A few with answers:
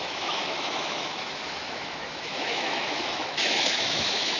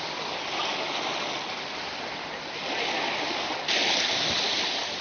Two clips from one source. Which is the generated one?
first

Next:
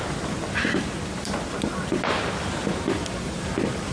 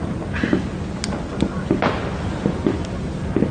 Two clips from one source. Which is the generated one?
first